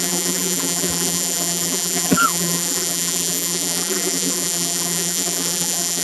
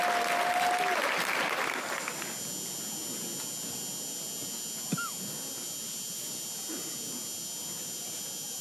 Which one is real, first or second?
second